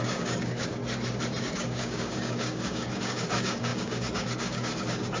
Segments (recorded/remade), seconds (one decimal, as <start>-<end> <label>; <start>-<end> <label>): 0.0-0.8 remade; 0.8-1.4 recorded; 1.4-5.2 remade